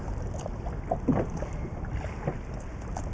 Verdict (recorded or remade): recorded